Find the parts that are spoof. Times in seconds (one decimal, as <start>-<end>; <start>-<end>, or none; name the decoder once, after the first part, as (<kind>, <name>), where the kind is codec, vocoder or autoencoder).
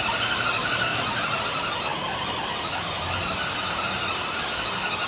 0.9-1.4 (vocoder, BigVGAN v2)